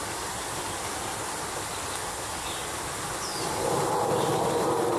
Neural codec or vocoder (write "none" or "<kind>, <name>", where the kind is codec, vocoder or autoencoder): none